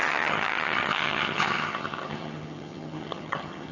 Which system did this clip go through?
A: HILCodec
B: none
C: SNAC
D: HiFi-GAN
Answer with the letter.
D